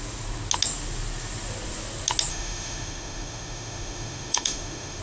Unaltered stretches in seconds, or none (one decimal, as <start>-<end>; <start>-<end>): 0.0-2.3